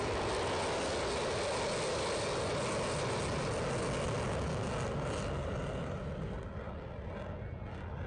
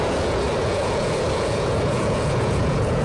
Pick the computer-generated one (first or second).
second